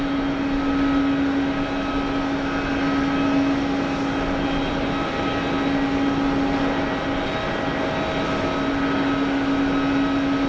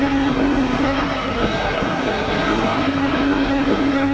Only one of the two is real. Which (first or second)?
first